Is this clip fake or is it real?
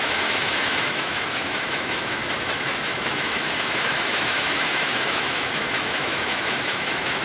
fake